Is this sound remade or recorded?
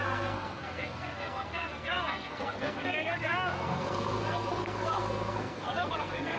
remade